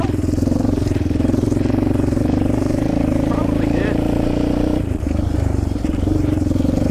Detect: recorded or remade remade